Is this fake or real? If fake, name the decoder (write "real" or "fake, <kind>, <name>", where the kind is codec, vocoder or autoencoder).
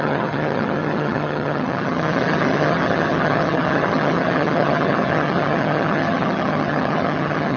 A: fake, vocoder, HiFi-GAN